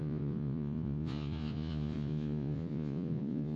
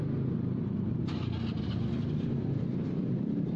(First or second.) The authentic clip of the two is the second